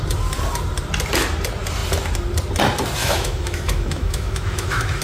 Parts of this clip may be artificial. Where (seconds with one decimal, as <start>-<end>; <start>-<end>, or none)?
3.0-5.0